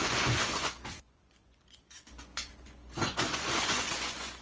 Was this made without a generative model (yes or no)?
no